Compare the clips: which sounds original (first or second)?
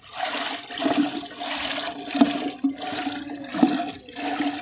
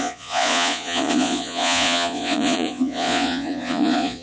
first